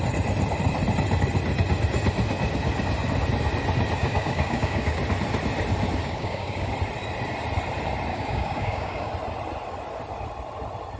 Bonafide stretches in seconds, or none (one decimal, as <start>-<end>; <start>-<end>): 0.0-4.0; 5.0-6.0; 6.7-8.1; 9.1-11.0